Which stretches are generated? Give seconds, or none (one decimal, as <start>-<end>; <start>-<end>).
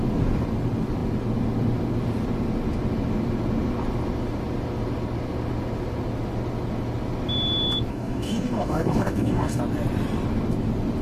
7.9-9.6